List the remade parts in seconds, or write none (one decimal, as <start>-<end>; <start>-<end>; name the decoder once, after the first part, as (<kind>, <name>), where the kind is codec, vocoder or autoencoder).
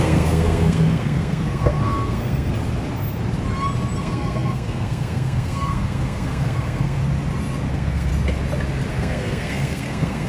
0.0-2.5 (codec, SNAC); 4.0-7.0; 7.7-8.1; 8.9-10.3